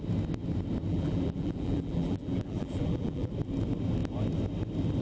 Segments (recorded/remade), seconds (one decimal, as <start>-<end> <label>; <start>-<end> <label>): 0.0-0.9 recorded; 0.9-3.3 remade; 3.3-5.0 recorded